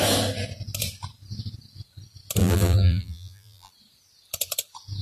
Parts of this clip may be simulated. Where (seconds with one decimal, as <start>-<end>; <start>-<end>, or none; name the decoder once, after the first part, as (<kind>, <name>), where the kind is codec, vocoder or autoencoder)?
2.4-3.7 (vocoder, BigVGAN v2)